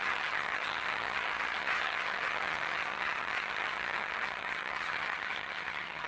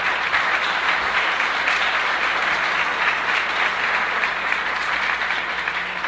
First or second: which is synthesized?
first